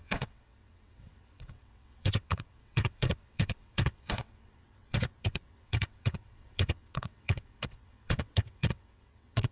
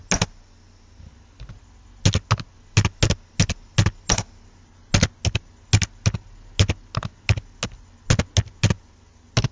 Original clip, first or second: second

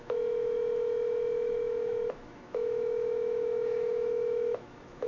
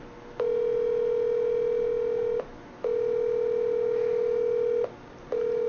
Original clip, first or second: second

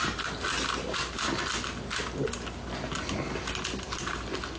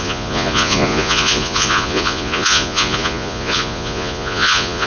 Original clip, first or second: first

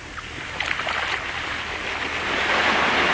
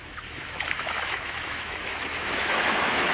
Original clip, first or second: first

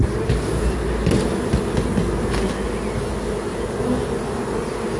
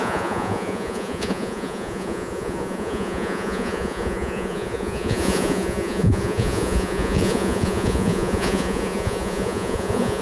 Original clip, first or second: first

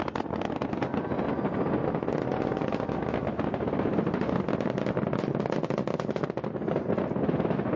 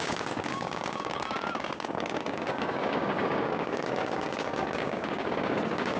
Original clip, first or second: first